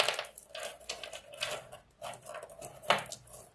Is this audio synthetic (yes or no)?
no